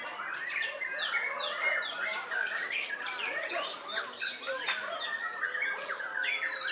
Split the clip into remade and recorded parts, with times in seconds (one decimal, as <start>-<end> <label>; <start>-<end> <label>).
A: 0.0-2.1 recorded; 2.1-2.9 remade; 2.9-6.7 recorded